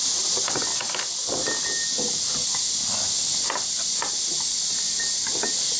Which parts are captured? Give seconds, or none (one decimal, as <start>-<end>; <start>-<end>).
0.0-5.8